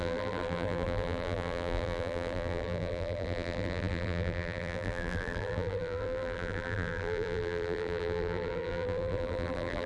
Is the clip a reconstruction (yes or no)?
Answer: yes